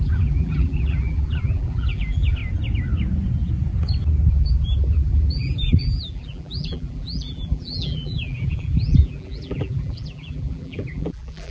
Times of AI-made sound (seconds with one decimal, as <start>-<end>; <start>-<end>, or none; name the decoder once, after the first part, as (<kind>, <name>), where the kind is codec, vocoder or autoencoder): 0.0-2.4 (vocoder, BigVGAN v2); 4.3-11.5